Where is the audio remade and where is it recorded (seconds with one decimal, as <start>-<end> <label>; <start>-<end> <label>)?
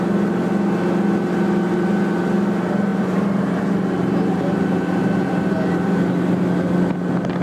0.0-2.9 recorded; 2.9-5.5 remade; 5.5-7.4 recorded